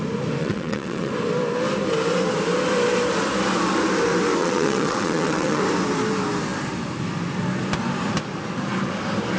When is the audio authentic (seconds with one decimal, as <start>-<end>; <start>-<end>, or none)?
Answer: 0.0-0.4; 1.1-4.4; 5.6-9.4